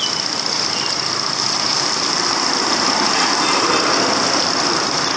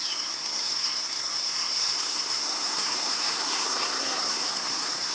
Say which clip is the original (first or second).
first